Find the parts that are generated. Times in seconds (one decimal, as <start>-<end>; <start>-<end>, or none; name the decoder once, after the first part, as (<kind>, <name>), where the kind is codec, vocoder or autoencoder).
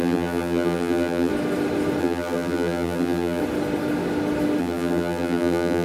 0.0-1.3 (vocoder, BigVGAN v2); 2.0-3.4; 4.6-5.8